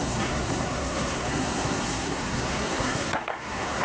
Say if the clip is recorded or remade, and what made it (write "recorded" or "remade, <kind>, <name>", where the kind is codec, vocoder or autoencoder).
remade, codec, SNAC